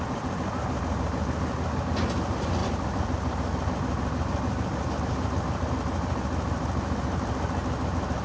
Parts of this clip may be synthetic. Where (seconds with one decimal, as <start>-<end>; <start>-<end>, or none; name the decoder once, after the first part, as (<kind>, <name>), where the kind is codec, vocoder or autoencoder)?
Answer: 2.6-5.7 (vocoder, BigVGAN v2)